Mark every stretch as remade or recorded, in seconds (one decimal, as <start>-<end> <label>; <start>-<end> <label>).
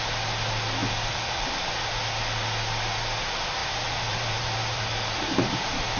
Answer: 0.0-0.8 recorded; 0.8-1.7 remade; 1.7-3.6 recorded; 3.6-6.0 remade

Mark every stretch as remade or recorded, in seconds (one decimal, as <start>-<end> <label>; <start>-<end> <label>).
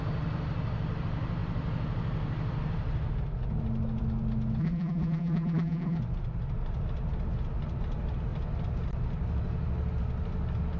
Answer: 0.0-4.6 recorded; 4.6-6.0 remade; 6.0-10.8 recorded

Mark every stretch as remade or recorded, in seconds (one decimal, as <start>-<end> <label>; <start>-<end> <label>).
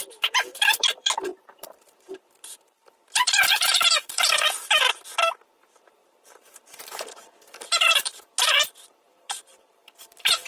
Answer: 0.0-10.5 remade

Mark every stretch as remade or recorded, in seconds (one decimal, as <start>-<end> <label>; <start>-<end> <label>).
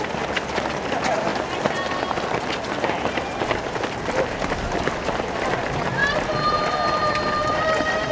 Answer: 0.0-6.0 recorded; 6.0-8.1 remade